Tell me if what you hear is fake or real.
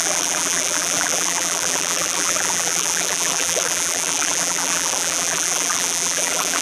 fake